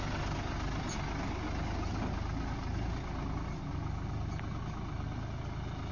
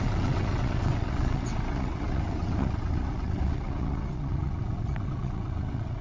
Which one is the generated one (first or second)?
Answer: second